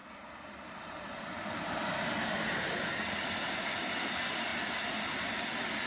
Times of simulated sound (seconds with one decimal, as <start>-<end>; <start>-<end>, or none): none